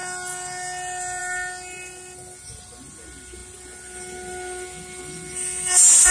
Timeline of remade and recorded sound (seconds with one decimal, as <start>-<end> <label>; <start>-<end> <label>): 0.0-6.1 recorded